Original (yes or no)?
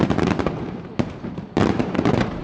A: no